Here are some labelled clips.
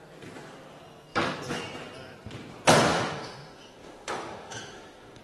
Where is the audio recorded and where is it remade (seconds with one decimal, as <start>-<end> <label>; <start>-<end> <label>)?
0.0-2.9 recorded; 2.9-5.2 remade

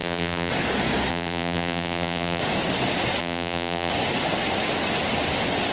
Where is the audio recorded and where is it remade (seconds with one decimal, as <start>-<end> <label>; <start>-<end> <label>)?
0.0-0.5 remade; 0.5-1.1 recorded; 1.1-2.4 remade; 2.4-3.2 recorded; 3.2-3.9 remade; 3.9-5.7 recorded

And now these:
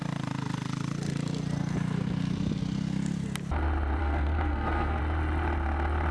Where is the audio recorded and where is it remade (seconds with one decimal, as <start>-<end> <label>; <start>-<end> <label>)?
0.0-4.0 recorded; 4.0-5.0 remade; 5.0-6.1 recorded

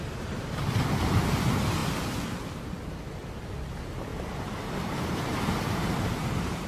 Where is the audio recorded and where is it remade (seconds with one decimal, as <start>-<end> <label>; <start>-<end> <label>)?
0.0-4.1 recorded; 4.1-6.7 remade

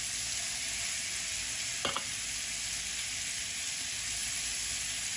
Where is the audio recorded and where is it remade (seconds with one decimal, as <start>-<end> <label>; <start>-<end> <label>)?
0.0-5.2 recorded

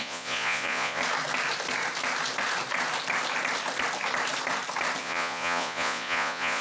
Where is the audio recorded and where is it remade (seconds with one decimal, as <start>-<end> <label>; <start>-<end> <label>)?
0.0-1.0 remade; 1.0-5.0 recorded; 5.0-6.6 remade

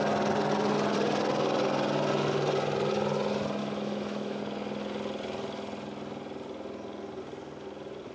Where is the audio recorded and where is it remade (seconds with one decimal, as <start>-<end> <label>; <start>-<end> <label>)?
0.0-3.6 recorded; 3.6-4.4 remade; 4.4-8.1 recorded